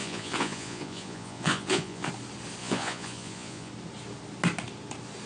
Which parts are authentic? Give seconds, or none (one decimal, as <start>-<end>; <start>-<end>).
2.1-2.6; 3.7-5.3